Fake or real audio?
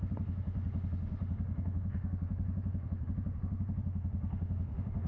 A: fake